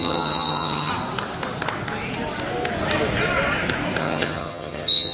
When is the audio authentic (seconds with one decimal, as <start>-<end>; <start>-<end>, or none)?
0.9-4.0